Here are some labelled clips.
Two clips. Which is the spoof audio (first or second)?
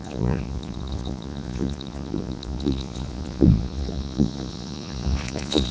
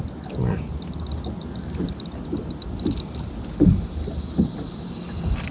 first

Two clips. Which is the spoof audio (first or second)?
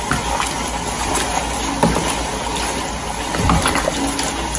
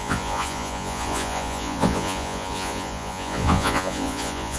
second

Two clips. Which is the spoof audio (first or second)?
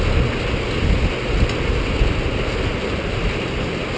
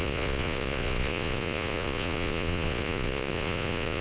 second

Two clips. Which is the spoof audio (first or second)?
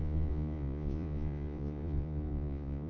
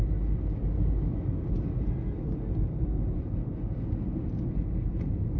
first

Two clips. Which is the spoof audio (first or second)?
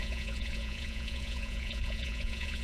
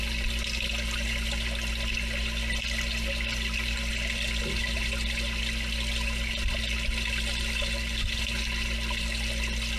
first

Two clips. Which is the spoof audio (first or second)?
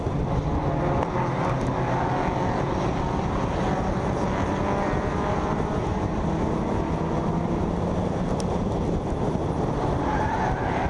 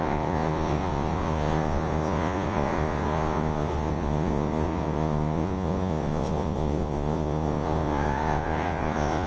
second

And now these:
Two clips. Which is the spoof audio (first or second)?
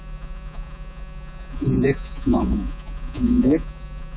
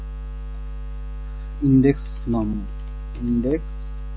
first